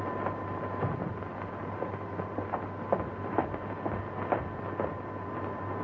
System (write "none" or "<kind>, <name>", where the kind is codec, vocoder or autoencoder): none